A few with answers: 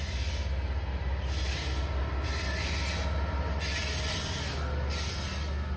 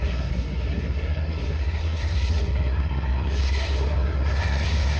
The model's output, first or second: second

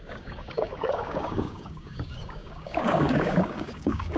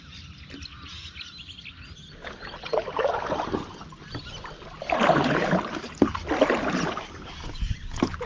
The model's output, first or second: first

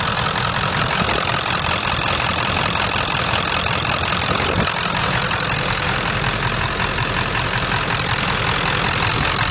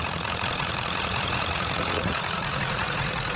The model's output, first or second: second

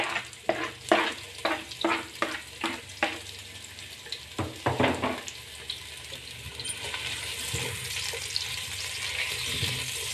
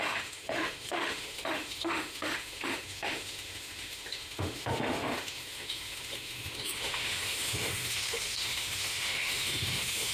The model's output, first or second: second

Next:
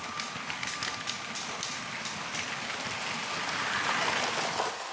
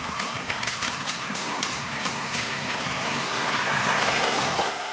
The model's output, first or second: second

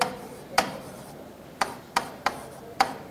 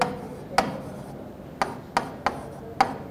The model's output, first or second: first